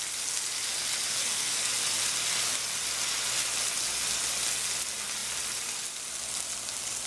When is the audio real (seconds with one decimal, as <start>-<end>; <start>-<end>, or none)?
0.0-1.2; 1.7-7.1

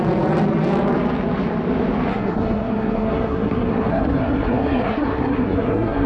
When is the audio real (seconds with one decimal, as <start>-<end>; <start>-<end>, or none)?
0.0-2.1

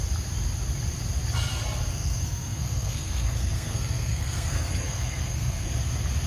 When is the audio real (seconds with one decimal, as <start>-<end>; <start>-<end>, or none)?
0.0-1.9; 5.7-6.3